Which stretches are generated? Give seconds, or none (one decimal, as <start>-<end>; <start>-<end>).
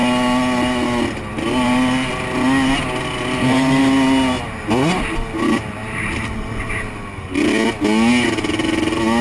none